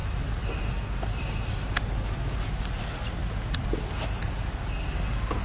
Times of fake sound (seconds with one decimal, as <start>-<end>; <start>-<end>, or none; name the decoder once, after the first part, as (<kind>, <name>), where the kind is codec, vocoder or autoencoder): none